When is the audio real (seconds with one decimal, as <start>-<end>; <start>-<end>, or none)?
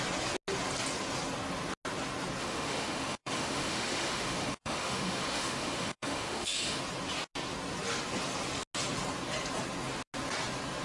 0.0-2.4; 6.8-10.8